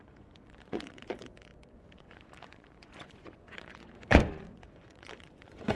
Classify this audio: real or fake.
fake